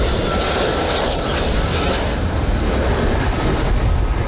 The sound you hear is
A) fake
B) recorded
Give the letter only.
B